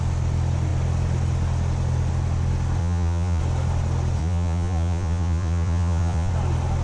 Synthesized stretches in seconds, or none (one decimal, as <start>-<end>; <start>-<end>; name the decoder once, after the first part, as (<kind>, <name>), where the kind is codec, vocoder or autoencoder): 2.8-3.4 (vocoder, Vocos); 4.2-6.3